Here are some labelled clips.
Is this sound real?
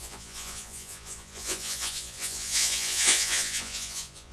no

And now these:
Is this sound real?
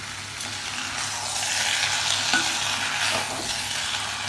yes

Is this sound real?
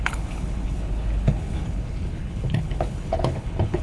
no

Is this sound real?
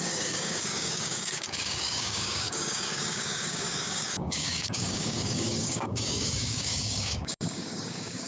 no